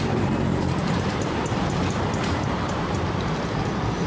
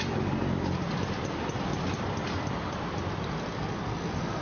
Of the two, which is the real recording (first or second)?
second